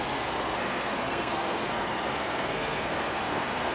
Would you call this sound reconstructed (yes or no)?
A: yes